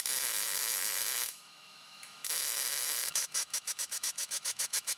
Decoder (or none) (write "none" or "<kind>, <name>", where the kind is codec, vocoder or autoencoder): autoencoder, DAC-VAE